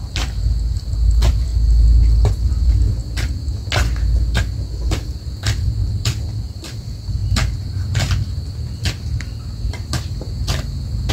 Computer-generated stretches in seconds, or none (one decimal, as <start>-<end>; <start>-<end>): 0.0-1.5; 2.3-3.0; 4.9-7.2

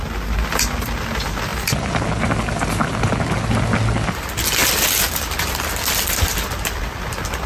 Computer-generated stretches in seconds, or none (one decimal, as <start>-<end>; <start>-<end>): 4.6-6.8

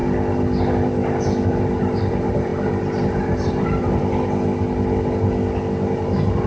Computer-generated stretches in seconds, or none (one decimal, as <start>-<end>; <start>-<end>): 1.5-4.0; 5.9-6.5

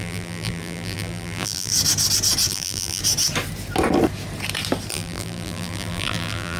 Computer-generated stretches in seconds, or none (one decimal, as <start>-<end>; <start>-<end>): 0.0-1.7; 2.5-3.0; 4.9-6.6

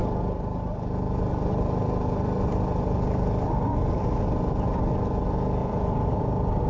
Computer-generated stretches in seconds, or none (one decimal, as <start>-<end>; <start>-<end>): 0.0-4.0; 5.6-6.1